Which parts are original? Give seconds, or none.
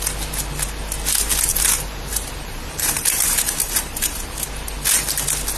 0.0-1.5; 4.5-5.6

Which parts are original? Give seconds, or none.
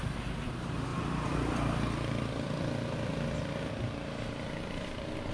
0.0-0.9; 3.7-5.3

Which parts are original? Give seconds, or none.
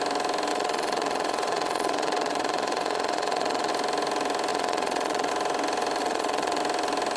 0.0-0.5; 3.7-4.5; 5.3-6.0; 6.6-7.2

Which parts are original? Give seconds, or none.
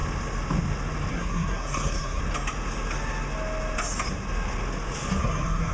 0.0-1.1; 2.2-5.2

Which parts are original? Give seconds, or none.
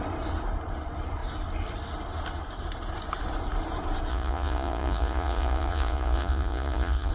0.0-4.1